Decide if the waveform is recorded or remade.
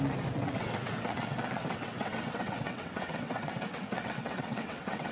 remade